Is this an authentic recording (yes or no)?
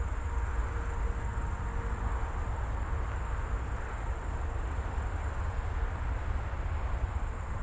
yes